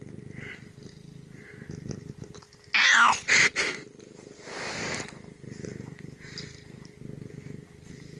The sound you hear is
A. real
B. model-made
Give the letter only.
A